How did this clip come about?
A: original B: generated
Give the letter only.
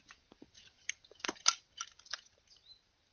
A